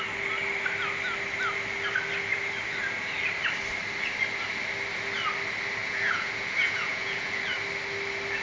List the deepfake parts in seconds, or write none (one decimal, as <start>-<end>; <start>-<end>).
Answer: 5.8-7.4